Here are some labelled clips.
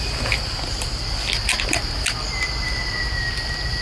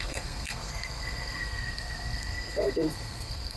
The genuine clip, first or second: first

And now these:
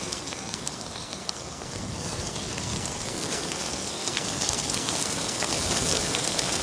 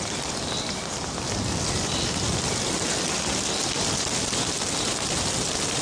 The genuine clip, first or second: second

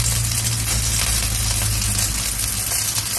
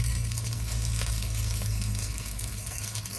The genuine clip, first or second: first